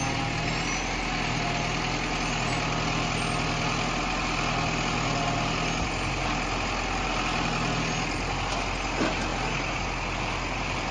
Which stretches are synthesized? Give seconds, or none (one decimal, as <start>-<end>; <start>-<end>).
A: none